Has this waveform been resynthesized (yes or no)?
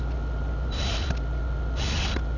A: no